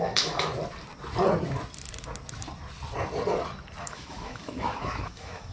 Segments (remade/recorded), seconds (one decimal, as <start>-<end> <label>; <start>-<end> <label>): 0.0-0.5 remade; 0.5-3.8 recorded; 3.8-5.5 remade